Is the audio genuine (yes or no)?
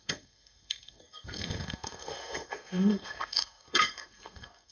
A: no